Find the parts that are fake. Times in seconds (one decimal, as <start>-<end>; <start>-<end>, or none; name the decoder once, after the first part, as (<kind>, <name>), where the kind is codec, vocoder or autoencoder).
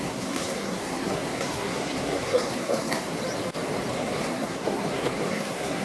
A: 0.0-3.1 (codec, SNAC); 3.9-5.8